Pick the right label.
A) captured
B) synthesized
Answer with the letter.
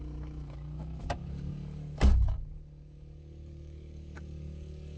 B